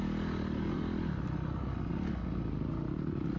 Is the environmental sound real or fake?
real